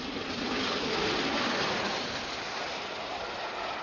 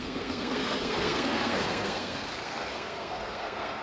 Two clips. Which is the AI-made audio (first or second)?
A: second